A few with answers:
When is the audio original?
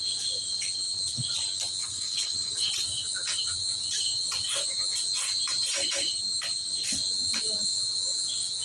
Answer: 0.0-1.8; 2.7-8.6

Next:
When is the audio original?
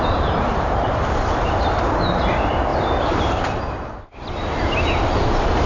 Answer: none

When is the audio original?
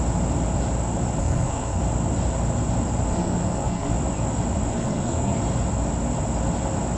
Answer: 0.0-1.2; 1.8-3.1; 3.9-4.7; 5.4-7.0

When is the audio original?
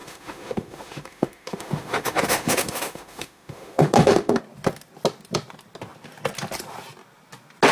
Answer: 4.4-7.7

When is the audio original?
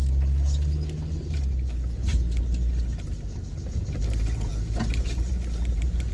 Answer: 0.0-1.2; 2.1-2.9; 4.5-5.3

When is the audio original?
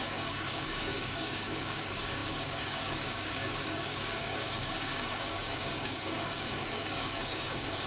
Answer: none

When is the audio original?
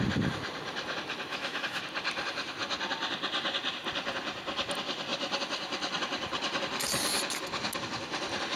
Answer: 0.0-1.3; 1.8-8.6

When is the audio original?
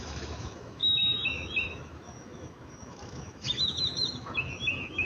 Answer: none